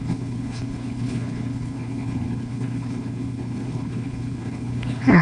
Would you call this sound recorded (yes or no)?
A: no